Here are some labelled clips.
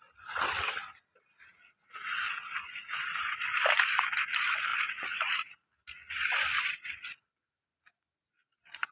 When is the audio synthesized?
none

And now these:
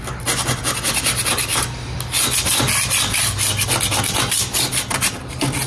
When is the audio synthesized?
none

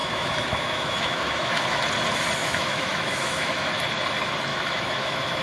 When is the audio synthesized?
0.0-1.8 (autoencoder, DAC-VAE); 2.4-3.7; 4.5-5.4

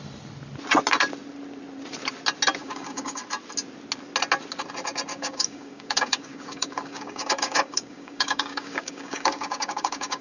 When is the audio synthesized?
2.6-3.2 (codec, DAC); 5.1-10.2

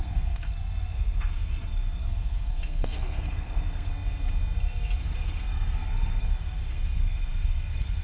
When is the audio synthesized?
0.0-3.9 (codec, SNAC); 5.0-8.0

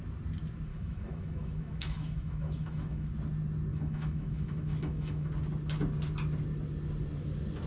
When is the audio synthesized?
0.7-3.1 (autoencoder, DAC-VAE); 3.7-5.3

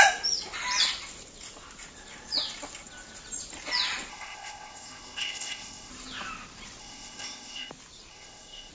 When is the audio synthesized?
4.1-5.9 (codec, ZipCodec); 6.8-7.7; 8.1-8.7

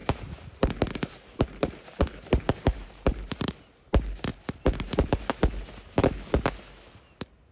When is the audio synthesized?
0.0-3.5 (vocoder, BigVGAN v2); 4.3-5.2